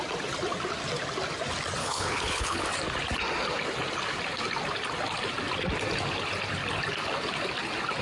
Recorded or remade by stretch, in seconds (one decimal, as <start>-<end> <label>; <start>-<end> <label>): 0.0-1.8 recorded; 1.8-2.6 remade; 2.6-8.0 recorded